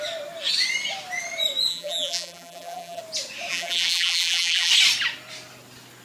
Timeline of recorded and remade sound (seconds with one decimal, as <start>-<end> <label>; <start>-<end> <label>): 0.0-1.7 recorded; 1.7-3.0 remade; 3.0-3.5 recorded; 3.5-4.7 remade; 4.7-6.0 recorded